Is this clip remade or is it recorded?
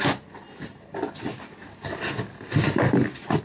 recorded